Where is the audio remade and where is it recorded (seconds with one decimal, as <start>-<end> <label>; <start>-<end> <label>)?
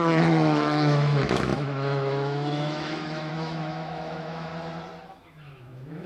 0.0-4.5 remade; 4.5-5.1 recorded; 5.1-6.1 remade